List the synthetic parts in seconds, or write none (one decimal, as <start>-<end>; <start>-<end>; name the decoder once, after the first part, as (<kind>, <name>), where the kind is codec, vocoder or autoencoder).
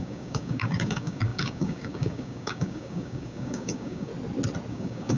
0.0-4.1 (codec, DAC); 4.7-5.2